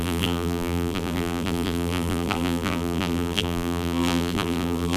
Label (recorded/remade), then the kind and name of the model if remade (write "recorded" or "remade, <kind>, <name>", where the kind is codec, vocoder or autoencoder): remade, vocoder, BigVGAN v2